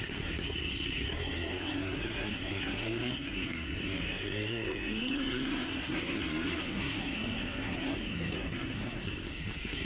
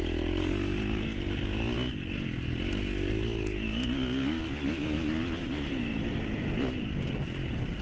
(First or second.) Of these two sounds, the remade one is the first